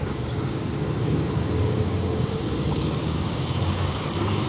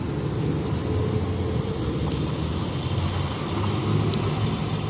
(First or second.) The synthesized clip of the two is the first